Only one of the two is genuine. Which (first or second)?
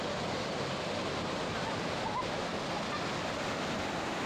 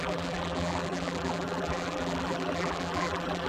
first